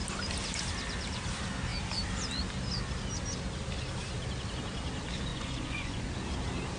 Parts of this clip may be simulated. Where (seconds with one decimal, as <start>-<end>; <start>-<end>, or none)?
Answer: 5.3-6.1